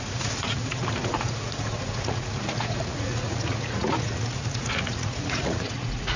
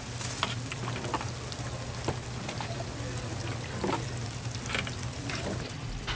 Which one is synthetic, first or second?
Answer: first